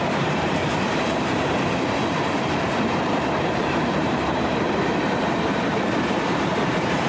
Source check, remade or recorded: remade